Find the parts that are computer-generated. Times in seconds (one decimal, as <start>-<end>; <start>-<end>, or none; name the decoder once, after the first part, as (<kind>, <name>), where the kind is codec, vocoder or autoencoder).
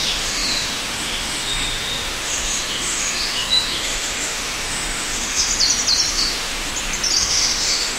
0.0-5.5 (autoencoder, DAC-VAE); 6.1-6.7; 7.2-8.0